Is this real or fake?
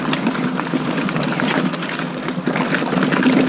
real